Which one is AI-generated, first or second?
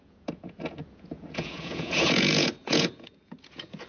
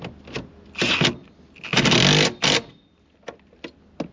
first